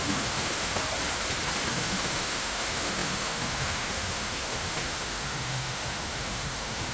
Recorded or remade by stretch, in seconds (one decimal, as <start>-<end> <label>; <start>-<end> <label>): 0.0-0.8 remade; 0.8-1.7 recorded; 1.7-6.9 remade